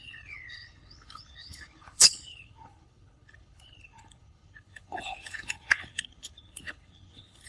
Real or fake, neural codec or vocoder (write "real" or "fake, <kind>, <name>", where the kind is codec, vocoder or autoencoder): fake, codec, HILCodec